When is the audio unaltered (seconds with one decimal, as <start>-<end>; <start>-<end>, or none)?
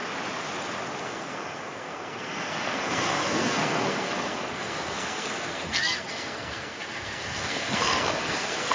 0.0-1.0